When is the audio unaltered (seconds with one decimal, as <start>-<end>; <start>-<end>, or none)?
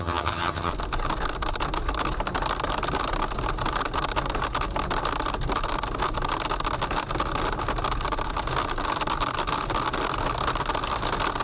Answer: 0.7-11.4